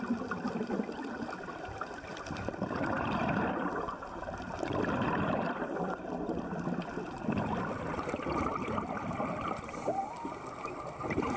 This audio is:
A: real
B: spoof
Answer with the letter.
B